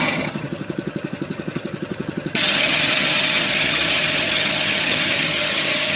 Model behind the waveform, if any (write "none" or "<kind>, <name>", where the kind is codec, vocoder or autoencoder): vocoder, HiFi-GAN